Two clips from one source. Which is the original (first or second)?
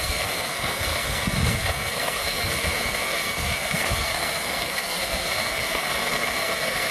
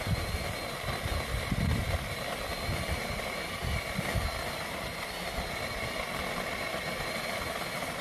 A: second